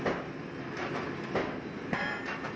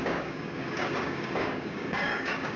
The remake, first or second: second